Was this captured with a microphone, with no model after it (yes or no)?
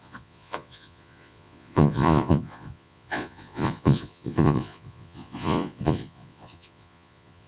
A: no